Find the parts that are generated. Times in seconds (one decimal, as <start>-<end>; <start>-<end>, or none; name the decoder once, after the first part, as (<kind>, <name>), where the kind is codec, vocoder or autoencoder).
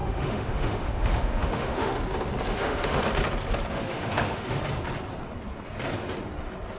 0.0-2.0 (autoencoder, DAC-VAE); 2.5-3.0; 3.7-4.6